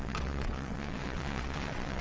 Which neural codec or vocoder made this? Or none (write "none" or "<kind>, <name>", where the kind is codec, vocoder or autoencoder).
vocoder, WaveNeXt